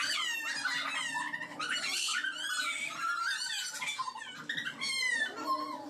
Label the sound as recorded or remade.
recorded